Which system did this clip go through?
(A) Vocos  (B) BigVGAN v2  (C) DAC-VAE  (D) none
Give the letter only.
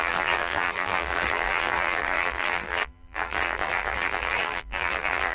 B